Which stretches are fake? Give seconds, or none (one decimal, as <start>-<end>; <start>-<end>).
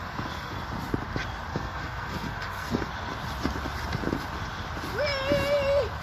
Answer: 0.0-0.6; 1.5-2.9